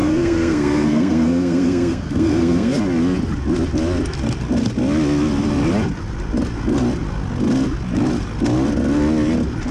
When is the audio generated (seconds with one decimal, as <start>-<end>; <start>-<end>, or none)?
0.0-2.8